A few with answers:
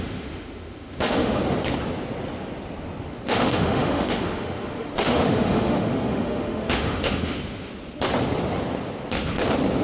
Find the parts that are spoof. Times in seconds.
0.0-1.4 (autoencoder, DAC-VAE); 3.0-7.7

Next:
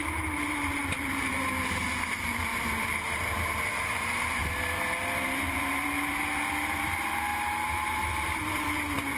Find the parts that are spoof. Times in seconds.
0.0-9.2 (vocoder, BigVGAN v2)

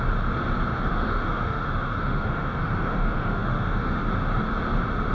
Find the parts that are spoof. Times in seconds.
0.9-4.0 (autoencoder, DAC-VAE)

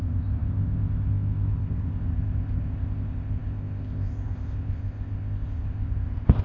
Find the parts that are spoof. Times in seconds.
0.0-6.4 (codec, ZipCodec)

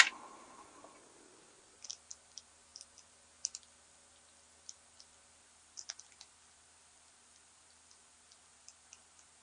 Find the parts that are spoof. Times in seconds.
none

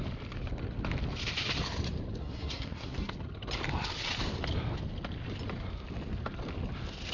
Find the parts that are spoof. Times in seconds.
2.2-3.1 (codec, SNAC)

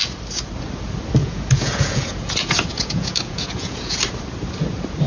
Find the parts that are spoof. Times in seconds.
1.2-4.0 (vocoder, Vocos)

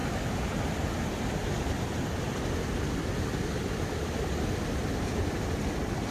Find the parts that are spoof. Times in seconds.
none